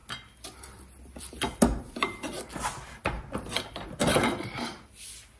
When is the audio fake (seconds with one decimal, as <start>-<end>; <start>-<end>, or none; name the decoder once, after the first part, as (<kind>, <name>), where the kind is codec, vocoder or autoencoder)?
none